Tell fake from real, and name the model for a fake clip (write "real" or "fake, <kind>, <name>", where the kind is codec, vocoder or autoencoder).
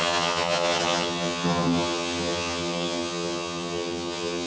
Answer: fake, vocoder, HiFi-GAN